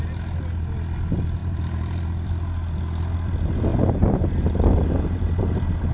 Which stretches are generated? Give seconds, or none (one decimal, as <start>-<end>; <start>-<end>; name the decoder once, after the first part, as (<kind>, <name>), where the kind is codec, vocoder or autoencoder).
1.4-2.3 (vocoder, BigVGAN v2); 3.7-5.4